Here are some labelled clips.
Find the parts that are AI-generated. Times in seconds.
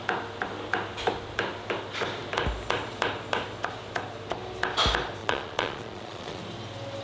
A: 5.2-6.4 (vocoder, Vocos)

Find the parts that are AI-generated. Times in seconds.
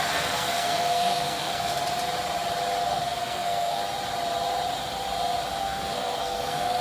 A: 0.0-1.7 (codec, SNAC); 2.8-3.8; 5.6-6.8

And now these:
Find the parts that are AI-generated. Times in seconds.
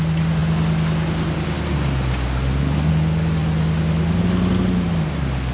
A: none